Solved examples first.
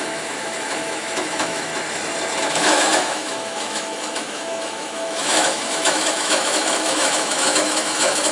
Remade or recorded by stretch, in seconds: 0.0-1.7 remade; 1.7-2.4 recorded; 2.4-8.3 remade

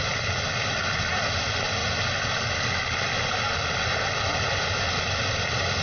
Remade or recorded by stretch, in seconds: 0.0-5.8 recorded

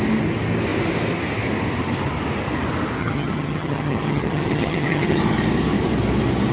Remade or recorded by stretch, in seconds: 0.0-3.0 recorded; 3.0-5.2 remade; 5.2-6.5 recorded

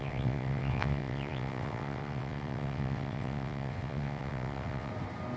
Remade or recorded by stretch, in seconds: 0.0-4.9 remade; 4.9-5.4 recorded

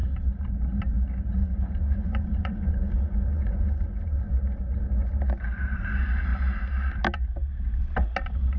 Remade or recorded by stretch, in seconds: 0.0-1.4 recorded; 1.4-4.2 remade; 4.2-8.6 recorded

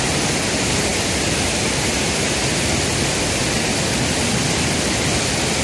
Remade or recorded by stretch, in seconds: 0.0-5.6 recorded

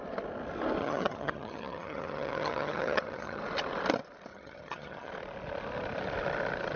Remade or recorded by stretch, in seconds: 0.0-0.8 recorded; 0.8-3.4 remade; 3.4-4.3 recorded; 4.3-5.1 remade; 5.1-6.8 recorded